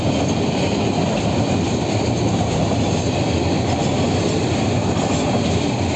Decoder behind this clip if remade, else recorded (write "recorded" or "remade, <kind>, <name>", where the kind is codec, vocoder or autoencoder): recorded